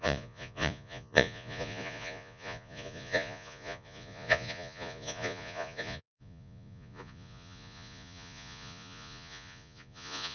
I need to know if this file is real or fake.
fake